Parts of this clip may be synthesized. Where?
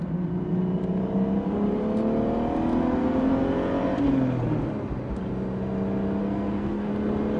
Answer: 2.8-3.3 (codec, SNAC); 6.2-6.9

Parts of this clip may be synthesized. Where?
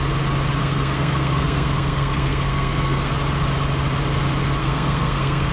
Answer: 0.6-3.1 (codec, SNAC); 4.6-5.5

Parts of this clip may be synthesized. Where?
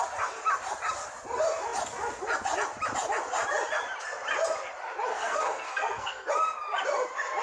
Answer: 5.1-6.3 (codec, SNAC)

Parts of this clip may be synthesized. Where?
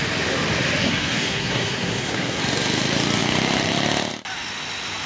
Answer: 0.8-2.4 (codec, SNAC)